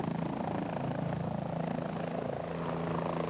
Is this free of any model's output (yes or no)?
yes